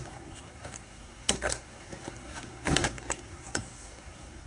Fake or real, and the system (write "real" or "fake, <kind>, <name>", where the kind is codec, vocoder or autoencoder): fake, codec, SNAC